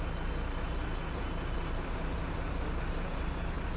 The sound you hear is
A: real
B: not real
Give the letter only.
A